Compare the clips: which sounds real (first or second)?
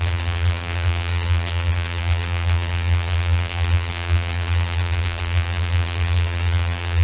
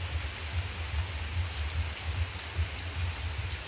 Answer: second